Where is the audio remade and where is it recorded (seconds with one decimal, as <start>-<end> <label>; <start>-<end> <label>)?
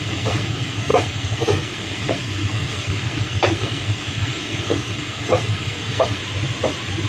0.0-6.2 remade; 6.2-7.1 recorded